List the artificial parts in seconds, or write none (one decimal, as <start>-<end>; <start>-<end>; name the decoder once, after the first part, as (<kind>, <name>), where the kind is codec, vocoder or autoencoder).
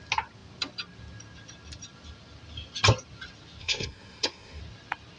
3.6-4.6 (codec, SNAC)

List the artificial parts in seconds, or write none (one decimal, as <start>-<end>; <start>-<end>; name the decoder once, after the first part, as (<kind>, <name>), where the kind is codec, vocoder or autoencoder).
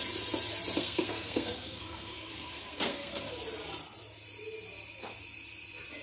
0.8-3.3 (codec, SNAC)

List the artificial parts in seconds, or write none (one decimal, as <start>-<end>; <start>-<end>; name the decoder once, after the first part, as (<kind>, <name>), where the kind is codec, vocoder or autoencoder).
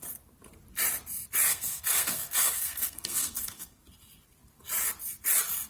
1.5-3.8 (codec, SNAC)